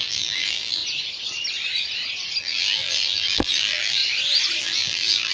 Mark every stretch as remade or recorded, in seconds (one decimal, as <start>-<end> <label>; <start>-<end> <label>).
0.0-0.8 remade; 0.8-2.4 recorded; 2.4-4.0 remade; 4.0-4.6 recorded; 4.6-5.3 remade